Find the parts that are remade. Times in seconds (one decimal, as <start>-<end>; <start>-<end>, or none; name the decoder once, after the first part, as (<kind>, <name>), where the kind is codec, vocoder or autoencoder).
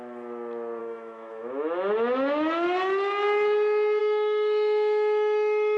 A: 0.8-1.9 (autoencoder, DAC-VAE); 4.0-5.8